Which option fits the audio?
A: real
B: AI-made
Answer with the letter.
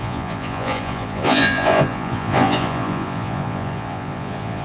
B